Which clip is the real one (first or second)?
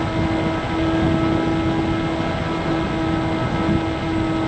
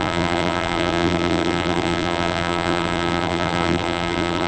first